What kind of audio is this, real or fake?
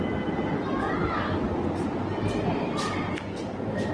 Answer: real